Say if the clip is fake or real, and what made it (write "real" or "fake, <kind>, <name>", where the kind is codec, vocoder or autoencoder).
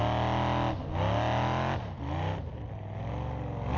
real